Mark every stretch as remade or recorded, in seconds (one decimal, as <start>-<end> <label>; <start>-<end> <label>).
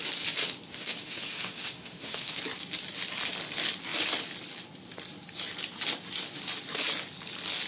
0.0-0.7 recorded; 0.7-2.4 remade; 2.4-7.7 recorded